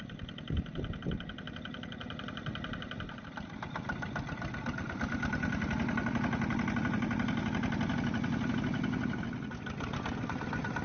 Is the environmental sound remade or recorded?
recorded